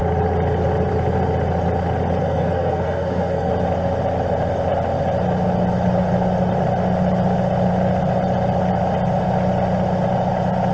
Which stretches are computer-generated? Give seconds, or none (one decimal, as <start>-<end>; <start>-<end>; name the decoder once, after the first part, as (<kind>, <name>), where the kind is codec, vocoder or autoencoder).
2.2-3.5 (codec, SNAC)